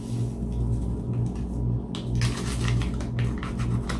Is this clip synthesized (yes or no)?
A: no